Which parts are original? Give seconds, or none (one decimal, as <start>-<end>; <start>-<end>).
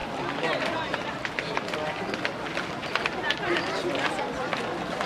1.6-5.1